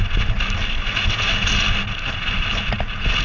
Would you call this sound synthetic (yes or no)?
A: no